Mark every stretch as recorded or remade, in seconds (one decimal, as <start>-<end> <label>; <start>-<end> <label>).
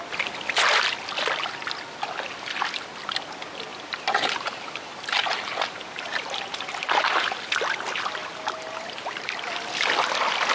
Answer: 0.0-3.7 recorded; 3.7-7.4 remade; 7.4-10.5 recorded